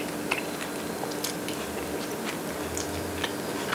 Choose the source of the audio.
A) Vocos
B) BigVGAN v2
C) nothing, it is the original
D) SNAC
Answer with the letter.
C